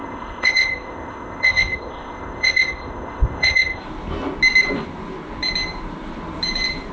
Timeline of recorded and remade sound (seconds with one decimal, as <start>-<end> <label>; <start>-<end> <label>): 0.0-3.8 remade; 3.8-6.9 recorded